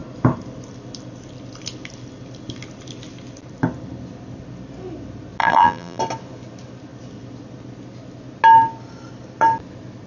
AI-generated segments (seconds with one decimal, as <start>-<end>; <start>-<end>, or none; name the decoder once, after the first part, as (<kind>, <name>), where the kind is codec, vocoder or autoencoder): 5.4-6.0 (vocoder, BigVGAN v2)

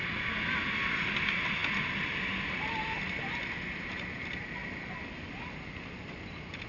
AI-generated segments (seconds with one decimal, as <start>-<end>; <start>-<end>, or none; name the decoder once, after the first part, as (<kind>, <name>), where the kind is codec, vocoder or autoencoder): none

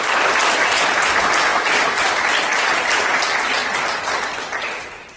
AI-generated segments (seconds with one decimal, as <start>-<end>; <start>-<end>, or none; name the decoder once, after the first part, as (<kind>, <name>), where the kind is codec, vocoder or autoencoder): 0.0-5.2 (vocoder, BigVGAN v2)

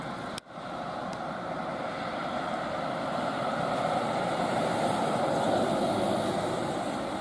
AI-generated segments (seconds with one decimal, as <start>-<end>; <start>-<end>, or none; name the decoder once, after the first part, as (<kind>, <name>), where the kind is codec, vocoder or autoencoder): 1.0-5.3 (vocoder, BigVGAN v2)

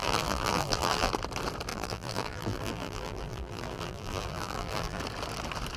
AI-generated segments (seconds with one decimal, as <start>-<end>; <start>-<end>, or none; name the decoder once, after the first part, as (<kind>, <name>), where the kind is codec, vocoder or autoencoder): 0.0-1.1 (vocoder, BigVGAN v2); 1.7-5.0

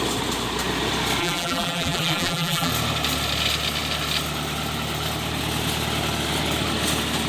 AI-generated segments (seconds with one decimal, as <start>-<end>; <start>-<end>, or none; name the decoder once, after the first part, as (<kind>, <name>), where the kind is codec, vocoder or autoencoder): 1.2-2.7 (vocoder, BigVGAN v2)